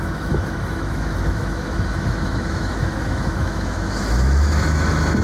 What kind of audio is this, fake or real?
fake